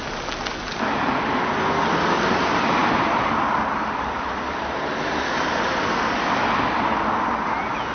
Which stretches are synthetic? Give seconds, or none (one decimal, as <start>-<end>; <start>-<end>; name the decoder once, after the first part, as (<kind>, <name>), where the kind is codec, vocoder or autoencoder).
2.8-4.9 (vocoder, BigVGAN v2)

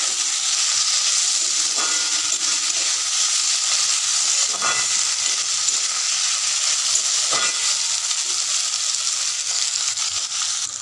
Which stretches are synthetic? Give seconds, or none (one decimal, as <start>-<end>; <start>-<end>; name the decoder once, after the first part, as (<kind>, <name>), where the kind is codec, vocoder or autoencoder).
9.3-10.0 (codec, SNAC)

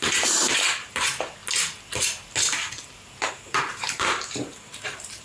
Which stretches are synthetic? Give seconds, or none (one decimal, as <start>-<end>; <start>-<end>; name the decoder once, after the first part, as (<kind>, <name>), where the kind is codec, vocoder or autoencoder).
0.0-1.4 (vocoder, BigVGAN v2); 3.3-5.2

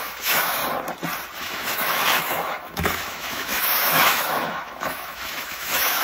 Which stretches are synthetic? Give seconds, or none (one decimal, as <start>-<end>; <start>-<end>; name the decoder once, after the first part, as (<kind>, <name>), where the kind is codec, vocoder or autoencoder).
0.0-0.6 (autoencoder, DAC-VAE); 1.4-6.0

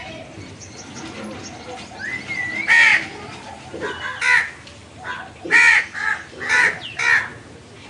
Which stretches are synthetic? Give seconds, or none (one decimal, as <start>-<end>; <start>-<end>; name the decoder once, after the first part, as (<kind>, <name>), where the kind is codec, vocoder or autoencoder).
none

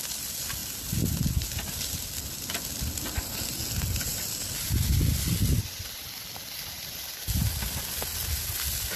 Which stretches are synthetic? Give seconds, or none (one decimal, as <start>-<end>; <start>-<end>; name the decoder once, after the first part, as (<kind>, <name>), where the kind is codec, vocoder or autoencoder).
4.1-5.3 (vocoder, BigVGAN v2)

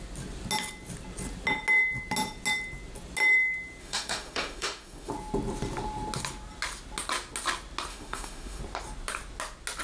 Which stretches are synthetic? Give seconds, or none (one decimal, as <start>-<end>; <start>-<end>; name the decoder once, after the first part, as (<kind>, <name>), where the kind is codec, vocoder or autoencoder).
3.8-5.1 (autoencoder, DAC-VAE); 7.9-8.6

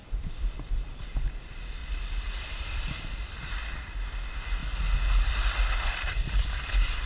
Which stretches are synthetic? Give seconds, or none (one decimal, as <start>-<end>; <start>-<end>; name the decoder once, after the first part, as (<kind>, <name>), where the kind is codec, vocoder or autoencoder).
0.0-4.6 (vocoder, BigVGAN v2); 5.6-7.1